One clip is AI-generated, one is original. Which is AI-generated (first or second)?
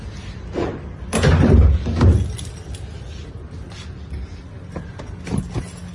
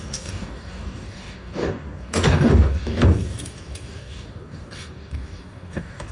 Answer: second